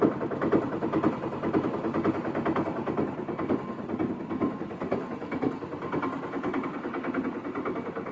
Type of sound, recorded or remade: recorded